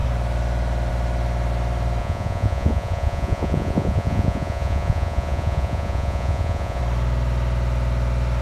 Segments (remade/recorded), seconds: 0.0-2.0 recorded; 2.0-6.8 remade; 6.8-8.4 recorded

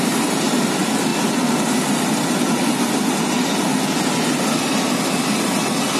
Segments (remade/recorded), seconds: 0.0-6.0 recorded

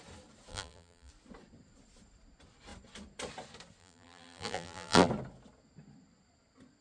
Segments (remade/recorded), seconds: 0.0-0.5 recorded; 0.5-1.1 remade; 1.1-3.8 recorded; 3.8-5.1 remade; 5.1-6.8 recorded